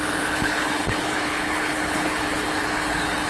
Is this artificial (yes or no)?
yes